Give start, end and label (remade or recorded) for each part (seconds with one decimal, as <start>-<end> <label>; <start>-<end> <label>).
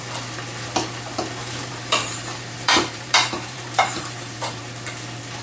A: 0.0-1.4 recorded; 1.4-4.6 remade; 4.6-5.4 recorded